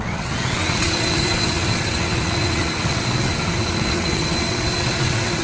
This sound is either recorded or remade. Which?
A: remade